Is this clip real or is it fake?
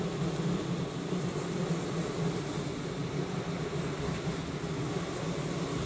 real